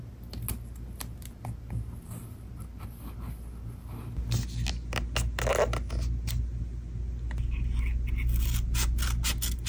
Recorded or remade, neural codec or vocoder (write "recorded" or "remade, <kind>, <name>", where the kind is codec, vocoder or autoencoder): recorded